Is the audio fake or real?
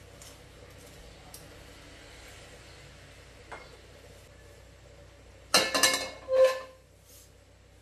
real